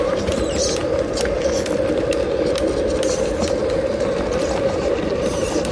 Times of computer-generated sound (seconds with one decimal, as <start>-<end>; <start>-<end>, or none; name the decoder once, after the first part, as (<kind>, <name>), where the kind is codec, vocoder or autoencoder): 0.0-0.8 (vocoder, BigVGAN v2); 3.9-5.7